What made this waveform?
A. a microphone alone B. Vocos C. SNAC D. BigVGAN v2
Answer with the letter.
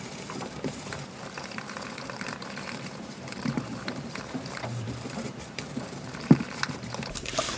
D